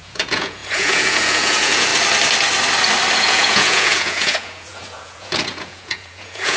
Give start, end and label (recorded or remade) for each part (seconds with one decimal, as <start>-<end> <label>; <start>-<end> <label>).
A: 0.0-1.9 remade; 1.9-3.2 recorded; 3.2-6.6 remade